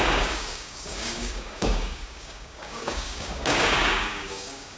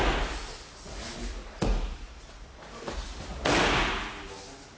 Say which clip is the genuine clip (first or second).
second